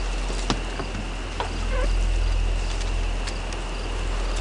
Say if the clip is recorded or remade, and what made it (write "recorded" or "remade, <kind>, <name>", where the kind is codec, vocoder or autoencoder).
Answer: recorded